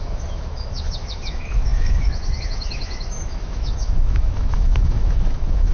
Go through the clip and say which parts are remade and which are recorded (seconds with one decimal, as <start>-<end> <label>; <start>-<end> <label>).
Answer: 0.0-5.7 remade